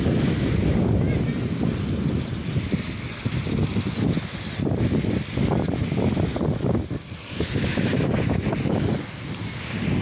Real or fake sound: real